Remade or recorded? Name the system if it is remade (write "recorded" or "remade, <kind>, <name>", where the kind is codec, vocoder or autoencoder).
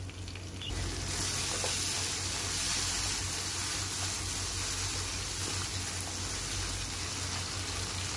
recorded